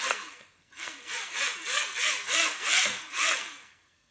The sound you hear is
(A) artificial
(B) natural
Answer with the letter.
A